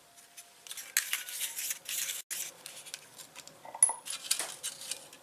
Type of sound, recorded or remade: recorded